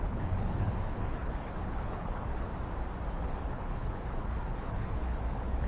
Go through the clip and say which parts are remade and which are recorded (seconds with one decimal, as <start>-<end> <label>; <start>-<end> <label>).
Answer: 0.0-2.5 remade; 2.5-3.1 recorded; 3.1-5.7 remade